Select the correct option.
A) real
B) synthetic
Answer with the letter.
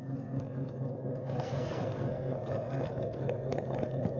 B